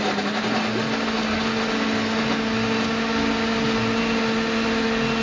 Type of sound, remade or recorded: recorded